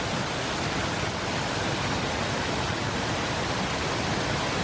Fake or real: real